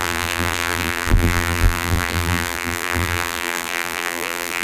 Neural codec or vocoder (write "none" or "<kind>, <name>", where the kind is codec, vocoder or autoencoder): vocoder, BigVGAN v2